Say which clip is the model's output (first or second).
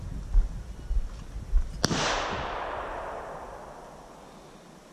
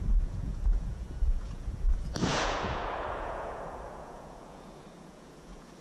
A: second